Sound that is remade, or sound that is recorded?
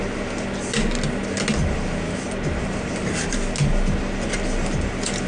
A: recorded